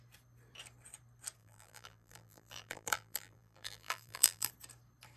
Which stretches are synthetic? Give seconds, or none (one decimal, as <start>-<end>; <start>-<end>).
1.4-4.5